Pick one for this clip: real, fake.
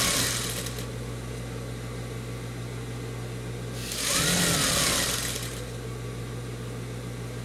real